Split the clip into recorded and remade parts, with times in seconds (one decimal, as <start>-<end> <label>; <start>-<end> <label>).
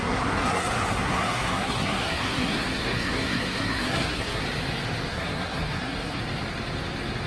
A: 0.0-4.4 remade; 4.4-5.1 recorded; 5.1-6.2 remade; 6.2-7.3 recorded